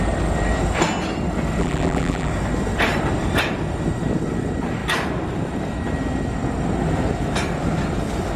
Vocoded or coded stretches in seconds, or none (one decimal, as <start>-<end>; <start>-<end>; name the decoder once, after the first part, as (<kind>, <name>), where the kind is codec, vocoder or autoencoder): 1.6-2.3 (vocoder, BigVGAN v2)